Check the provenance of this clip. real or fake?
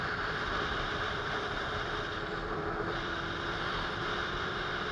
fake